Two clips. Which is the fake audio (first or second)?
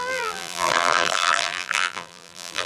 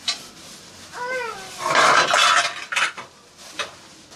first